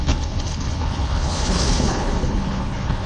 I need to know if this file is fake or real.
fake